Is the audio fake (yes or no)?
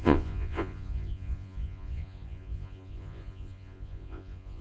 yes